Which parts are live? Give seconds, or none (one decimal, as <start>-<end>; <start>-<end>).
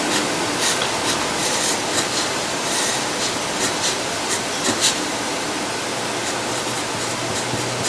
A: 0.0-1.4; 5.5-7.9